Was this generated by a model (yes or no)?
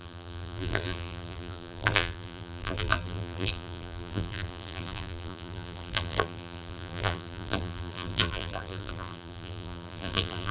yes